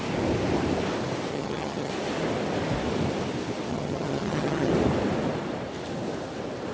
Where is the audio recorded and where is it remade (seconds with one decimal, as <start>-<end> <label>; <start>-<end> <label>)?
0.0-1.3 recorded; 1.3-1.9 remade; 1.9-3.7 recorded; 3.7-4.7 remade; 4.7-6.7 recorded